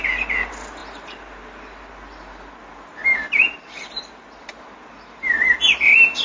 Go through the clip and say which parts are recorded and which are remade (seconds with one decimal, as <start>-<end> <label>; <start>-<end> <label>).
0.0-6.2 recorded